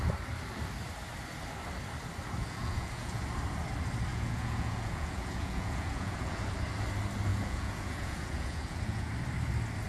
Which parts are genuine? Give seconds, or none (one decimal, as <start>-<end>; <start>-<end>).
0.0-2.4; 3.2-4.1; 6.4-7.3; 9.1-9.9